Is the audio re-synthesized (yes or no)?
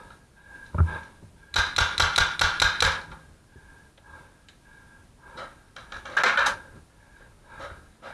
no